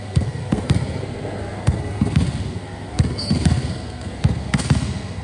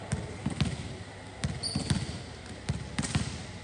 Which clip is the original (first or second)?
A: second